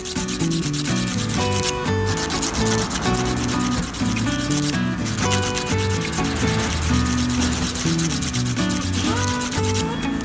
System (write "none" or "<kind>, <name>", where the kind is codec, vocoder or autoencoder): none